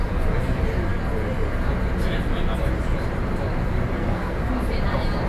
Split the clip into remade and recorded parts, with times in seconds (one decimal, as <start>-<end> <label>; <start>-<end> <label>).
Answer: 0.0-4.0 recorded; 4.0-4.5 remade; 4.5-5.3 recorded